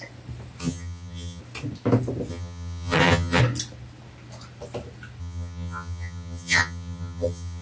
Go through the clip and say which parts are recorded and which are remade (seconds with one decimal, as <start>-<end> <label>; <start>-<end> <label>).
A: 0.0-0.6 recorded; 0.6-1.4 remade; 1.4-2.3 recorded; 2.3-3.4 remade; 3.4-5.2 recorded; 5.2-7.6 remade